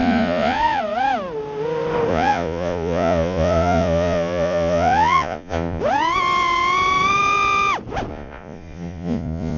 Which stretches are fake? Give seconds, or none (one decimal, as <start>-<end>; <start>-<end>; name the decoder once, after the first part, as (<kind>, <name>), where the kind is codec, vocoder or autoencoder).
0.0-0.8 (vocoder, Vocos); 2.1-5.8; 8.1-9.6